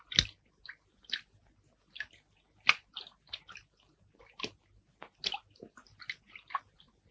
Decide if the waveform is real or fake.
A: real